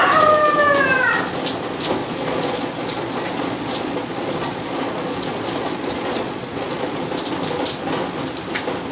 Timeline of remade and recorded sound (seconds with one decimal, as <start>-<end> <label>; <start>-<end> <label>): 0.0-2.0 recorded; 2.0-7.1 remade; 7.1-8.9 recorded